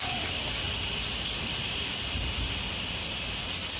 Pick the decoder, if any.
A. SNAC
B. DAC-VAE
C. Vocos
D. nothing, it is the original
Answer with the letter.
D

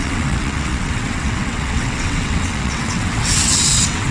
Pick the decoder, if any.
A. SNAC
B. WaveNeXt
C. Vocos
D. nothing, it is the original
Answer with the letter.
B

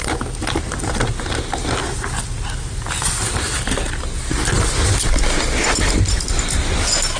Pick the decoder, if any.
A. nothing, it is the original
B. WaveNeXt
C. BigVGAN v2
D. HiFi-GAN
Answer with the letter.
A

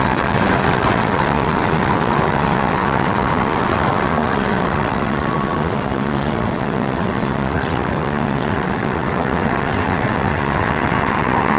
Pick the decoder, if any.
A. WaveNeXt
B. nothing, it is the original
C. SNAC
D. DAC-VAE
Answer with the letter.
A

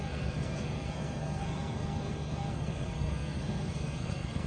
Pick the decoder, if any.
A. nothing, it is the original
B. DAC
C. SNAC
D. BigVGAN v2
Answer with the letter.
C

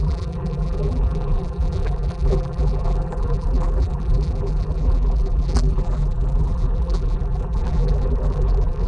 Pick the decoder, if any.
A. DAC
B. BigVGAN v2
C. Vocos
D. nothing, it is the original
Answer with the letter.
B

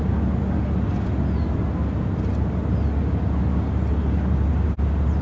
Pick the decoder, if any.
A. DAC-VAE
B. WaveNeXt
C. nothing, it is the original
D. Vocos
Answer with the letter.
C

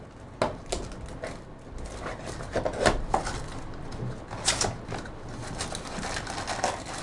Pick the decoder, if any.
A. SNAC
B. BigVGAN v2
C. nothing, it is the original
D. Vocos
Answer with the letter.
C